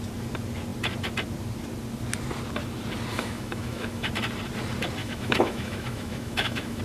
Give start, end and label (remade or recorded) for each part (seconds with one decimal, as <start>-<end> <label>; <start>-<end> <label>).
0.0-3.1 recorded; 3.1-4.1 remade; 4.1-5.0 recorded; 5.0-6.8 remade